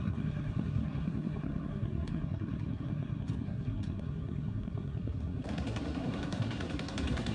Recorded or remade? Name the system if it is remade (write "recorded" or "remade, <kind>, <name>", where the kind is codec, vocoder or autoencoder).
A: remade, codec, SNAC